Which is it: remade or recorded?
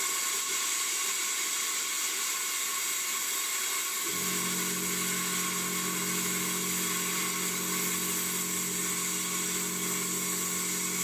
recorded